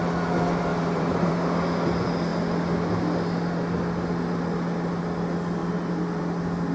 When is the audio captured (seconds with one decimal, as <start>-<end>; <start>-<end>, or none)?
0.0-0.7; 1.3-6.7